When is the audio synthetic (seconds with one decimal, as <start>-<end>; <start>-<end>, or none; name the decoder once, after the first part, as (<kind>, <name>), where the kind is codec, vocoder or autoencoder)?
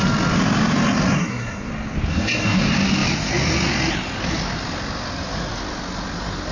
1.2-1.7 (codec, SNAC); 2.1-2.6